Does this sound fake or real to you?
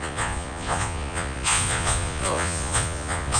fake